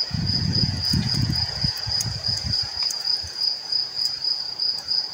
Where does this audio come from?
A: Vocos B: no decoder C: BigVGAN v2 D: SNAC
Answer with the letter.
A